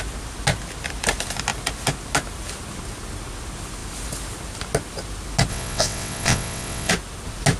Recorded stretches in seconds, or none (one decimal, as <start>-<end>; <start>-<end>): 0.0-5.5; 6.9-7.6